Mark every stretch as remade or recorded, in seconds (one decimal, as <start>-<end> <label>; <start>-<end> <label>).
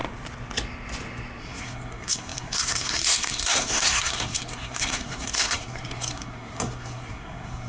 0.0-1.4 recorded; 1.4-7.7 remade